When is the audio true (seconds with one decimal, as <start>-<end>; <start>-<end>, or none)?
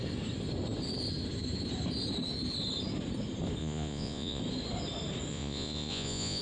0.0-3.6; 4.4-5.3